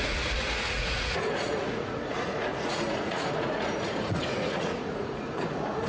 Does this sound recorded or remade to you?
remade